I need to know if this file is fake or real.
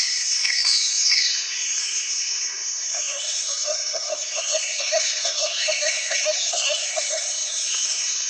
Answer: fake